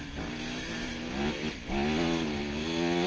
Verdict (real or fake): real